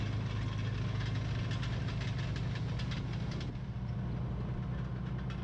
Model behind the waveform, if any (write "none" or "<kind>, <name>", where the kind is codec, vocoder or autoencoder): none